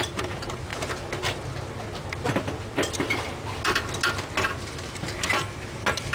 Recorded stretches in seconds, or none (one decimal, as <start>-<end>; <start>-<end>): 0.7-4.4